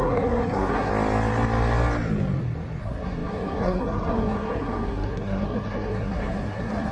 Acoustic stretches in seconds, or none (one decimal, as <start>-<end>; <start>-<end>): 0.9-2.8